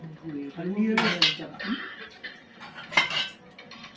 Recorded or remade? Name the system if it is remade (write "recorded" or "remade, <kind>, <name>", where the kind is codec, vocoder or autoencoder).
recorded